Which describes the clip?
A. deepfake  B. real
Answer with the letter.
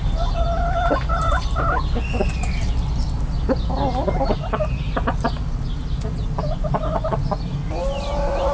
B